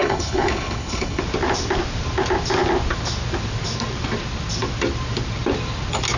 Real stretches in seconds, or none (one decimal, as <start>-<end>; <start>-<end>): 1.2-6.2